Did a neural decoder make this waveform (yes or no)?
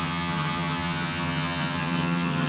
yes